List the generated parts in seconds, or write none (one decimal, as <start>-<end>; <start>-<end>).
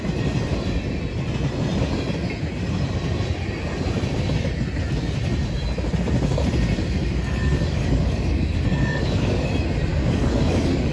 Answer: 7.0-9.5; 9.9-10.9